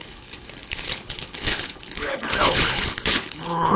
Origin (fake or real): fake